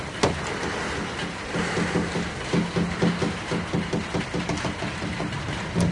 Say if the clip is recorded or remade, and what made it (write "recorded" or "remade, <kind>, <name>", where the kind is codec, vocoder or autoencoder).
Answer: recorded